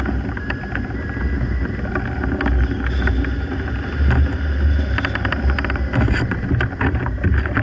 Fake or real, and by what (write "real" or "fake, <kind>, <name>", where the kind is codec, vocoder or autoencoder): real